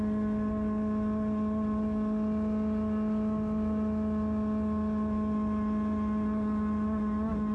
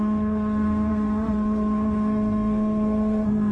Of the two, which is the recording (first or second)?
first